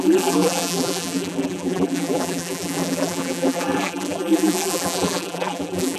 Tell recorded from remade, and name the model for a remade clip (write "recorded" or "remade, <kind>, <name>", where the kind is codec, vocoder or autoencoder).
remade, vocoder, BigVGAN v2